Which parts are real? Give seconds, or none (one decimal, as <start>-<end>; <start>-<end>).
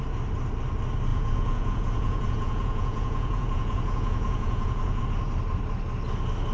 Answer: 0.0-1.1; 5.0-6.5